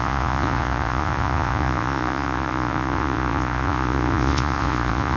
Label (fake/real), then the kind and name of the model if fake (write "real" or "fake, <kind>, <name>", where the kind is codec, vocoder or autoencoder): fake, vocoder, Vocos